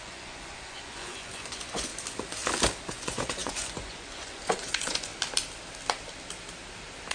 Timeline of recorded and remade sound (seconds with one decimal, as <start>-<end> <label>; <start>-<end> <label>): 0.0-1.9 remade; 1.9-2.9 recorded; 2.9-5.1 remade; 5.1-7.1 recorded